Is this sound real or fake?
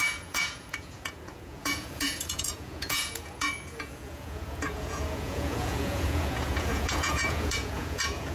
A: fake